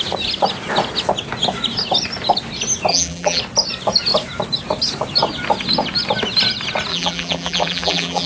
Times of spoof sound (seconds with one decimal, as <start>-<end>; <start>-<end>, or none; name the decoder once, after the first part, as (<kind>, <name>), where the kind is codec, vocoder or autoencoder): 2.9-3.4 (vocoder, BigVGAN v2); 6.9-8.3